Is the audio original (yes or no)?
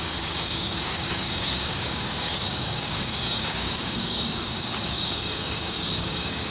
no